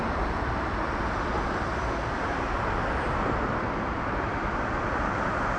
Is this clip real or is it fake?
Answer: real